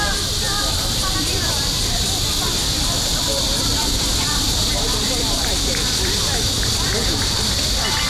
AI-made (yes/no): yes